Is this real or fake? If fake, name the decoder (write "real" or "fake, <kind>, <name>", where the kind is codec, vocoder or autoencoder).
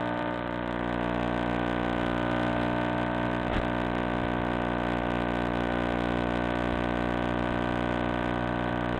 real